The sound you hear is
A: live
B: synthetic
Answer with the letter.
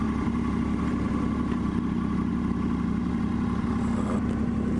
A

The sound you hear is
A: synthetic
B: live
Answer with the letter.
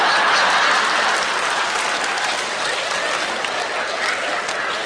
B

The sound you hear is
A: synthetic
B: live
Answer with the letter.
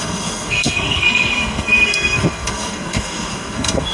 A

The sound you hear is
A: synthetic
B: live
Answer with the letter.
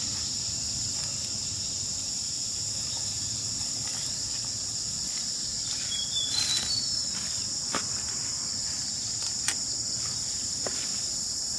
B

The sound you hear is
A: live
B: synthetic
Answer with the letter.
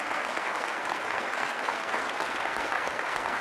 B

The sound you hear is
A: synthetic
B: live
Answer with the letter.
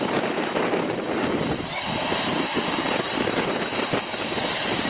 B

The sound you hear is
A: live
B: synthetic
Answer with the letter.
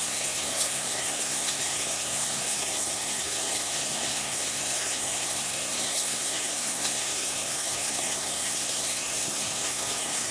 B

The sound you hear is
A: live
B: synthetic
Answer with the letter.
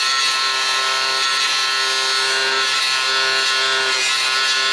A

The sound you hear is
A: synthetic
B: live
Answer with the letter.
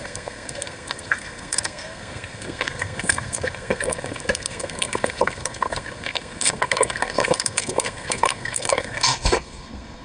A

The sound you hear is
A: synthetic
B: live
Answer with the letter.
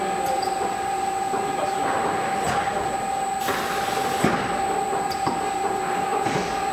B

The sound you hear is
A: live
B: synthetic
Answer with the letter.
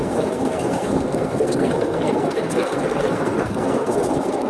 B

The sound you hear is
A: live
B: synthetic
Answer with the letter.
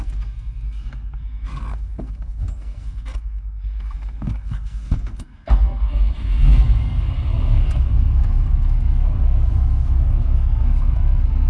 B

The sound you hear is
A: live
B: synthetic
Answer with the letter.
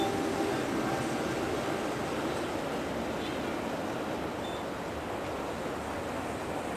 A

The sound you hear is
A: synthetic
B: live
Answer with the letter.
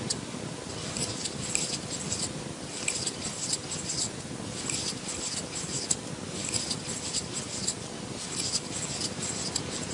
B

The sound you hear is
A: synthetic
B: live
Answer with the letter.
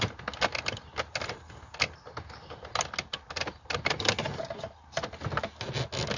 B